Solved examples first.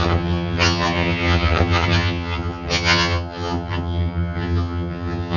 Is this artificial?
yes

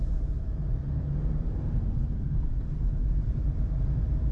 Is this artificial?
yes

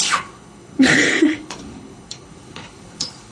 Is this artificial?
yes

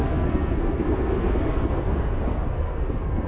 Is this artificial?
yes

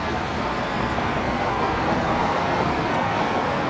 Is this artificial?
yes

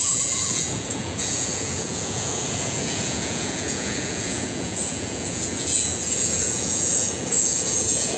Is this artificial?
yes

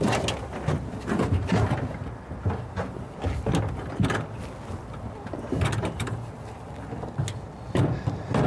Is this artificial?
no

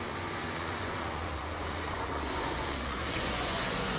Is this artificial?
yes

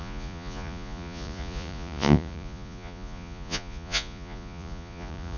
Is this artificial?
yes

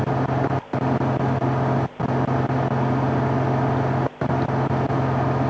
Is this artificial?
no